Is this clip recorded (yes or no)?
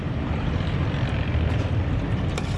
no